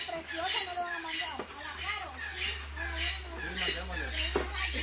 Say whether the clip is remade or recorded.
recorded